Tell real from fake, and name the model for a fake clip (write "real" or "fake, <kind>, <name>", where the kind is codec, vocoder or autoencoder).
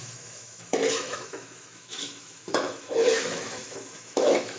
fake, autoencoder, DAC-VAE